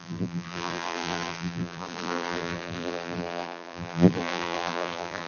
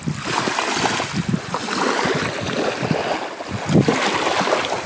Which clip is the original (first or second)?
second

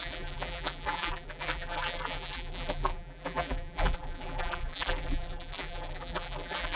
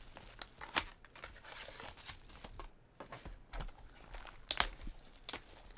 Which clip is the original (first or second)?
second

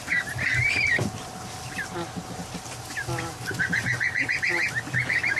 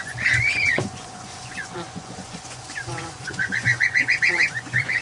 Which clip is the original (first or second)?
first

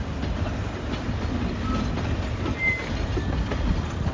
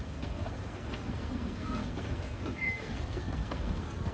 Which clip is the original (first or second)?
first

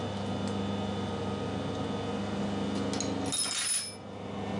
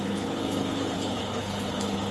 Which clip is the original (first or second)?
first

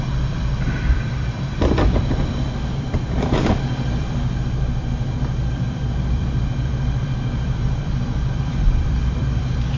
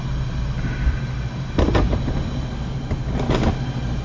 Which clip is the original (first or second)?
second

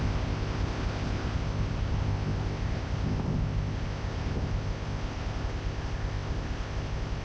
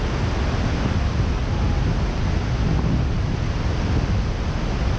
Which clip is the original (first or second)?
second